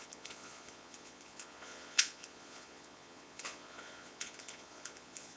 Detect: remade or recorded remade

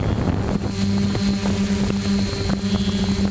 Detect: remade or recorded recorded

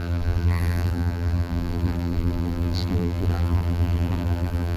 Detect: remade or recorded remade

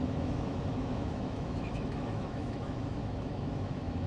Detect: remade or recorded remade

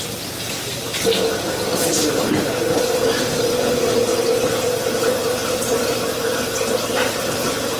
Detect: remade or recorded recorded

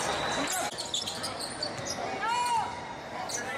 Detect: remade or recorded recorded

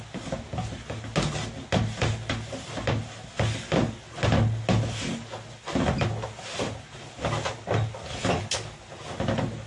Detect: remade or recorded recorded